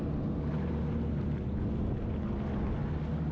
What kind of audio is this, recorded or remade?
recorded